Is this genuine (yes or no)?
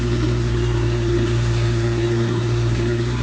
no